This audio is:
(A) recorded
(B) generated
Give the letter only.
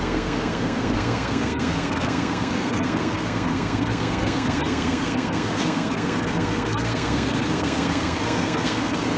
B